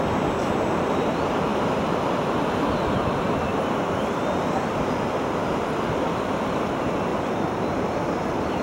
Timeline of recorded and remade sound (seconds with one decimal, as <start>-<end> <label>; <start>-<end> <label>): 0.0-7.1 recorded; 7.1-8.6 remade